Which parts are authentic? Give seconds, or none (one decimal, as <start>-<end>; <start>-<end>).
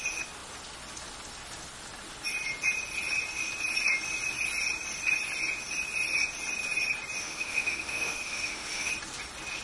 0.0-7.2; 8.9-9.6